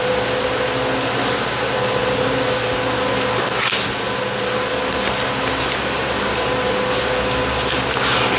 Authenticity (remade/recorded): recorded